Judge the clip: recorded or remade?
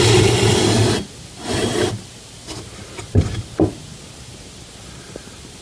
recorded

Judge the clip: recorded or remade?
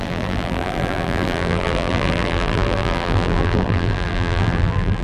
remade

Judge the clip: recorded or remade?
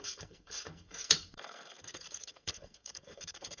remade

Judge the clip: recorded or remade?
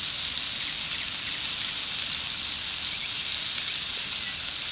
recorded